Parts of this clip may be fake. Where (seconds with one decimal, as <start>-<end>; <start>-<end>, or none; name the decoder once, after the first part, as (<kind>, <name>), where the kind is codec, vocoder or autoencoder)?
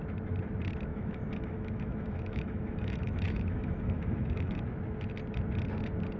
0.9-4.6 (autoencoder, DAC-VAE)